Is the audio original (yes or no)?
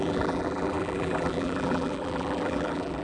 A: no